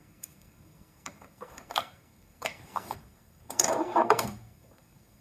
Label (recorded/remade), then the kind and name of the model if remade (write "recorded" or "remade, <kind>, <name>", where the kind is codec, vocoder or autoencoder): remade, codec, SNAC